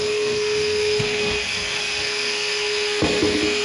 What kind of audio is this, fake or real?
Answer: fake